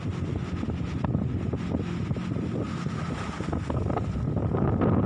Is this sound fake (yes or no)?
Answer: no